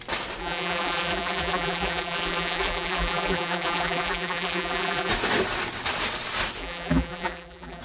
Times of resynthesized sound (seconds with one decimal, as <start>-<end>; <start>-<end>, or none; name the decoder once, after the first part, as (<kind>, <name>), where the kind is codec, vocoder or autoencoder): 0.4-5.1 (vocoder, BigVGAN v2); 6.6-7.8